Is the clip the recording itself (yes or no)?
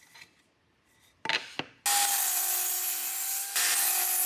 yes